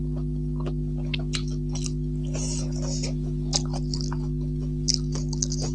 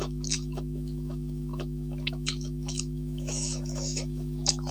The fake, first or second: second